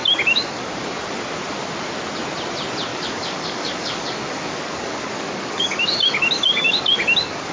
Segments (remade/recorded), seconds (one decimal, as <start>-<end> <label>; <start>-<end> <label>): 0.0-0.8 remade; 0.8-2.9 recorded; 2.9-7.5 remade